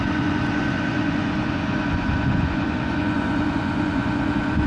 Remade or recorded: remade